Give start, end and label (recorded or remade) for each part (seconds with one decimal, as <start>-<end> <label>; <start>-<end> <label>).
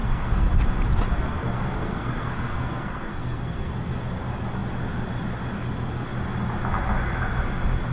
0.0-0.5 remade; 0.5-1.3 recorded; 1.3-3.7 remade; 3.7-7.9 recorded